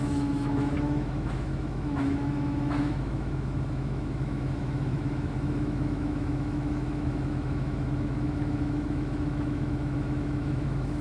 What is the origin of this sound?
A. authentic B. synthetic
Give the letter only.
B